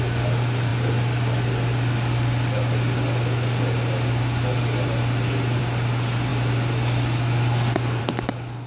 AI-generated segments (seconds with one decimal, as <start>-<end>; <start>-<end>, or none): none